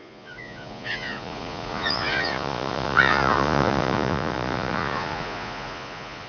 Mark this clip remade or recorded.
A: remade